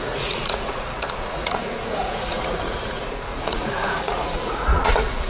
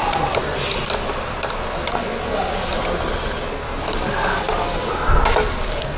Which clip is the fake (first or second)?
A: first